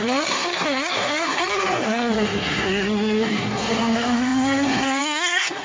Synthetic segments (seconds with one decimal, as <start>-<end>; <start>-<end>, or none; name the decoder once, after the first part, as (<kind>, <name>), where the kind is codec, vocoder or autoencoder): 0.0-5.6 (codec, SNAC)